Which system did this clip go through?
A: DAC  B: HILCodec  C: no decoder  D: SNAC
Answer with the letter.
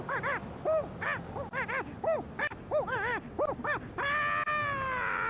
C